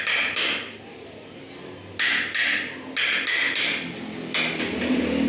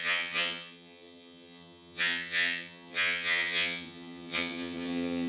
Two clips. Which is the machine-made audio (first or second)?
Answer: second